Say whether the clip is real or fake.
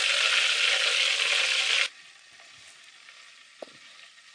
real